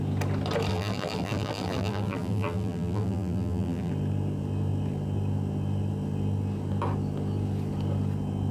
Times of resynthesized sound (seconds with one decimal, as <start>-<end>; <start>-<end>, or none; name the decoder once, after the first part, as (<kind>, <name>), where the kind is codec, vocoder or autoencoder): 0.7-3.9 (vocoder, BigVGAN v2)

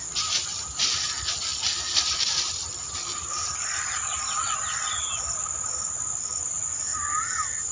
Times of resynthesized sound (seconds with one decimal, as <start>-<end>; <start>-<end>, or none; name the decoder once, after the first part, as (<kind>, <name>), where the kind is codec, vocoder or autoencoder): none

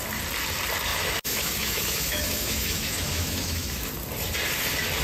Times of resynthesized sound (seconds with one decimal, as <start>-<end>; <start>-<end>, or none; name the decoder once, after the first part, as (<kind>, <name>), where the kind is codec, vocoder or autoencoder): 0.9-3.9 (autoencoder, DAC-VAE)

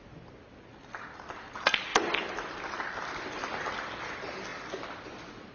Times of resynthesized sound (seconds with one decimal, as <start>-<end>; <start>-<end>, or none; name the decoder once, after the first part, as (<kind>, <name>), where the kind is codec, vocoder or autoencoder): 1.9-4.0 (vocoder, BigVGAN v2); 4.5-5.0

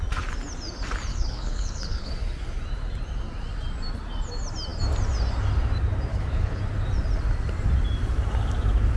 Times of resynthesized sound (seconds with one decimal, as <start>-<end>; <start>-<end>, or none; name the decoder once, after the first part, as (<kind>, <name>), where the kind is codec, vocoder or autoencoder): 1.1-2.1 (codec, HILCodec); 6.1-6.6

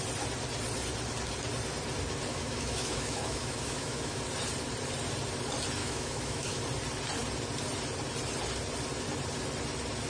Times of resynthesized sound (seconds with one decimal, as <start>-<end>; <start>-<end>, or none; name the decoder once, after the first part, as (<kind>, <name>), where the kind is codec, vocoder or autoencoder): 2.3-4.2 (autoencoder, DAC-VAE); 5.8-6.6

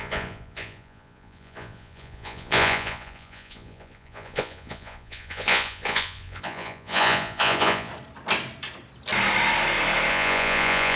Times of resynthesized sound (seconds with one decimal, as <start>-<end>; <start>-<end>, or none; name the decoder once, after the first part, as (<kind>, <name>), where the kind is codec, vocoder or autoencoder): 0.0-7.9 (vocoder, Vocos); 10.1-11.0